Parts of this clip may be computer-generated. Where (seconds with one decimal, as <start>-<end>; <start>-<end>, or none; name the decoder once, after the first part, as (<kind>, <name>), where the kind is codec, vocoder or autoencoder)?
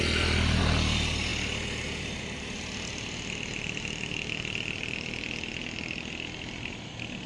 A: none